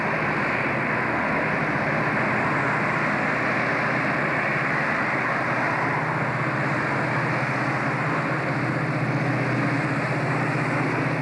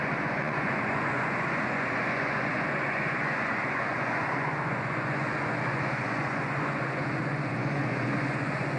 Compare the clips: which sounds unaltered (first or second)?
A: first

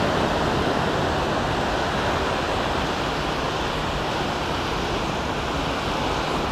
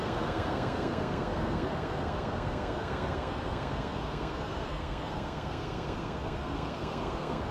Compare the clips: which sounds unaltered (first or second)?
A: first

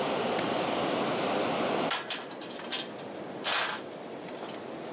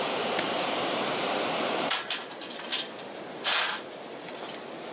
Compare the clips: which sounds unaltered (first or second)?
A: first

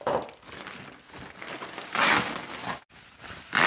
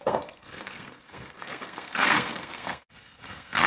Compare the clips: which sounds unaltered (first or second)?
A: first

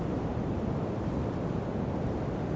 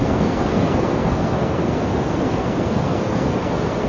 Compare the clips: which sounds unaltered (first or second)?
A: first